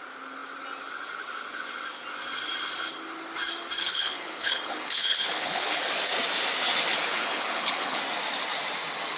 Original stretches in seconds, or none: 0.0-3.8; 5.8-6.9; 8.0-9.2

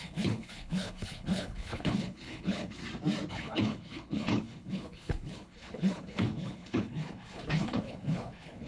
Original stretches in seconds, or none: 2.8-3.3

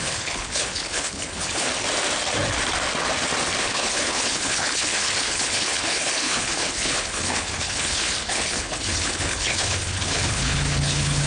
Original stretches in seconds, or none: 1.7-3.6